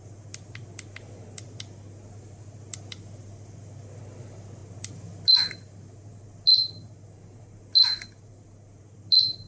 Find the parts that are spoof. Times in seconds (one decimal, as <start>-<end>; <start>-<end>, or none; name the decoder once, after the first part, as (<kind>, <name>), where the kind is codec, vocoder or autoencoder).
none

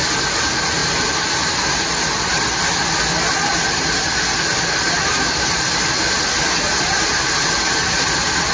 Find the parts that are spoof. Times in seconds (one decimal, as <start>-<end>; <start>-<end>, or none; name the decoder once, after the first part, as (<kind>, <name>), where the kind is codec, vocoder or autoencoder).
none

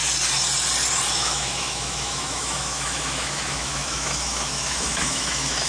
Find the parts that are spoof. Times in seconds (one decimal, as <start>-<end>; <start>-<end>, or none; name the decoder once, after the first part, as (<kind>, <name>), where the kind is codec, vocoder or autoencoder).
1.1-5.7 (autoencoder, DAC-VAE)

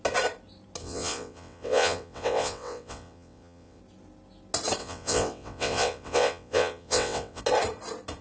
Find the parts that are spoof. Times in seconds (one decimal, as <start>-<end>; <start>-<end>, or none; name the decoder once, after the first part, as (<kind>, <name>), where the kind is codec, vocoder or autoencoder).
0.8-3.8 (vocoder, WaveNeXt); 4.8-7.4

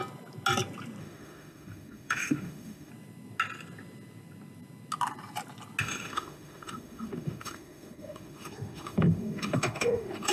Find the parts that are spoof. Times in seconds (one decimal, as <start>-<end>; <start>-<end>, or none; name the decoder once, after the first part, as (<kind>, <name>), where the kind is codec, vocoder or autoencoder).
1.0-2.9 (autoencoder, DAC-VAE); 5.8-10.3

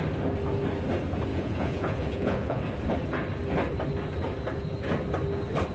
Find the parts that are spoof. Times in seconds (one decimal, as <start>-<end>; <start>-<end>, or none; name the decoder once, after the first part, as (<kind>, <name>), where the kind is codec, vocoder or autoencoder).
1.3-2.6 (vocoder, Vocos)

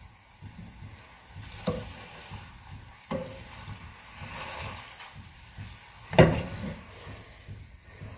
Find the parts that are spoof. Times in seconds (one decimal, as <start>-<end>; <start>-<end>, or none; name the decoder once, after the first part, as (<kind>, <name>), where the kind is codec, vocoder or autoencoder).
none

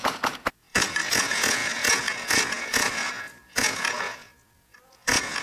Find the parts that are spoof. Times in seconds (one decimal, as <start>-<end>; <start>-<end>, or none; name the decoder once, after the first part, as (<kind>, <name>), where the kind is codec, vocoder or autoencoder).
0.0-5.4 (vocoder, Vocos)